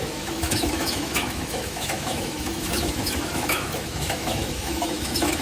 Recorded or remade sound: remade